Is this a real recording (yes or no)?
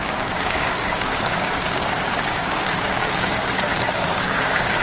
no